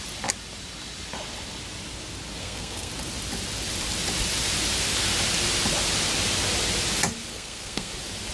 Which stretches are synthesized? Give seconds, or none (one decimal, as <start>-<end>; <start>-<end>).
2.4-2.9; 7.3-7.9

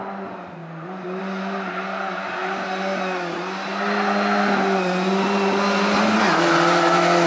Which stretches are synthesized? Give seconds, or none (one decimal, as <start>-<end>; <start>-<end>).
none

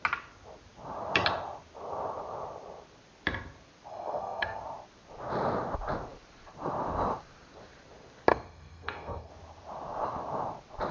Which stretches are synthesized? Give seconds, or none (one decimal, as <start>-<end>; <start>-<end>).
3.9-4.6; 8.3-9.3

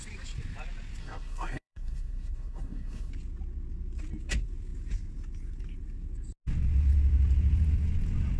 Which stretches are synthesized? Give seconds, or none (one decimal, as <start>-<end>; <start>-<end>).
1.0-3.1